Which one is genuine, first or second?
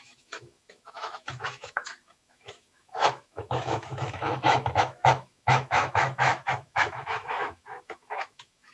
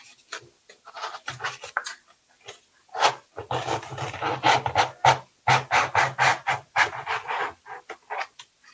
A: second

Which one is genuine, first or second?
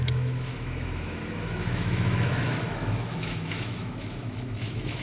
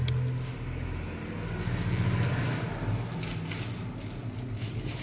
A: second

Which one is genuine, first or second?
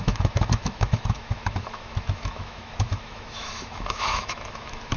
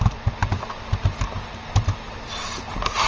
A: second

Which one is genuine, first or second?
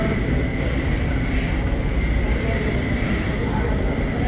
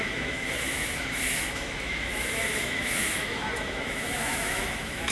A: first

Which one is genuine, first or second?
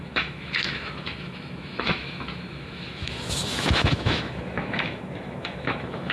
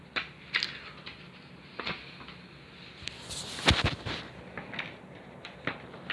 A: second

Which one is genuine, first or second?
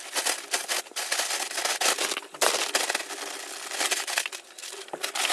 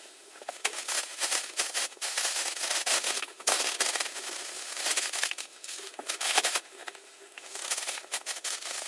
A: first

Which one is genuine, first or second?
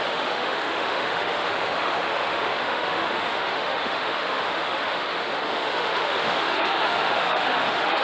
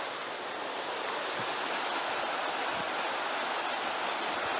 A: second